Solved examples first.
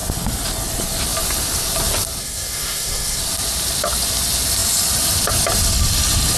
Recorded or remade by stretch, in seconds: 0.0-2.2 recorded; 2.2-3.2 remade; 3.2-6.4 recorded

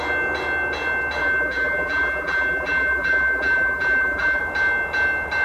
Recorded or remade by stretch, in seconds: 0.0-1.2 recorded; 1.2-4.4 remade; 4.4-5.4 recorded

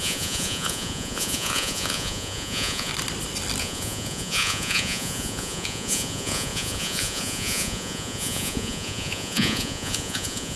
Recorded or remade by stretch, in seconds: 0.0-2.9 remade; 2.9-3.6 recorded; 3.6-10.6 remade

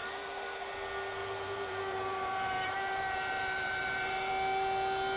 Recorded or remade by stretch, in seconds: 0.0-0.7 remade; 0.7-1.2 recorded; 1.2-4.3 remade; 4.3-5.2 recorded

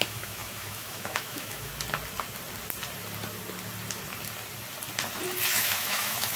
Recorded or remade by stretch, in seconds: 0.0-1.7 remade; 1.7-5.5 recorded; 5.5-6.4 remade

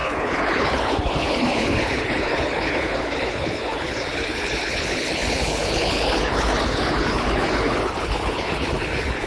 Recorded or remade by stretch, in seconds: 0.0-9.3 remade

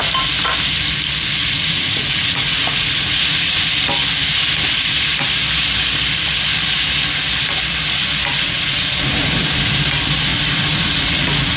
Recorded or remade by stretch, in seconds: 0.0-1.4 recorded; 1.4-3.6 remade; 3.6-8.3 recorded; 8.3-9.7 remade; 9.7-10.3 recorded; 10.3-11.6 remade

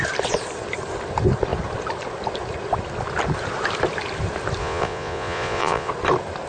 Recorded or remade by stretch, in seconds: 0.0-4.6 recorded; 4.6-5.9 remade; 5.9-6.5 recorded